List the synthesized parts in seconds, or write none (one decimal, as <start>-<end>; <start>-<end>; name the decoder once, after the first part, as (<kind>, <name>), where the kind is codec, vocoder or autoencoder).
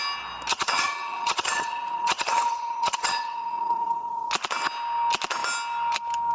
0.5-4.3 (vocoder, HiFi-GAN)